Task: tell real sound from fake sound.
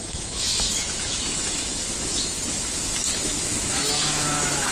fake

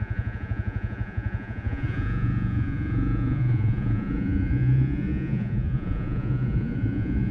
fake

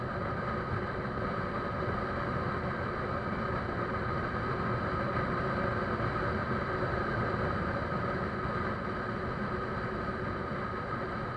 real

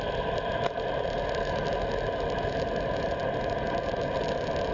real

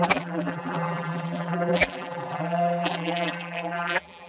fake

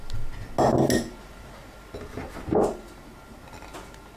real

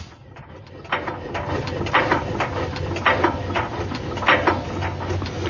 real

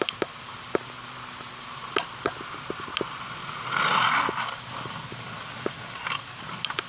real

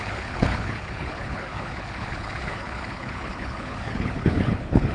fake